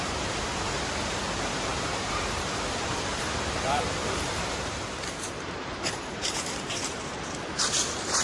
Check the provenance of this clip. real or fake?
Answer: fake